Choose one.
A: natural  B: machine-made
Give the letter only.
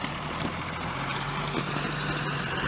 A